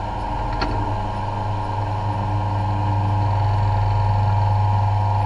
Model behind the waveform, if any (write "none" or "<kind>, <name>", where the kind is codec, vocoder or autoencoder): none